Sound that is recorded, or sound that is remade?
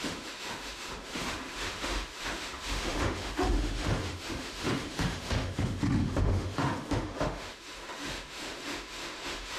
remade